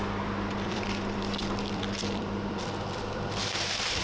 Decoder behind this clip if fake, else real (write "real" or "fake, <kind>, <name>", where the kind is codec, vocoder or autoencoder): fake, vocoder, BigVGAN v2